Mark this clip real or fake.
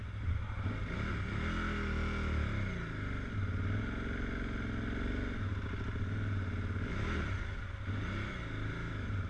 real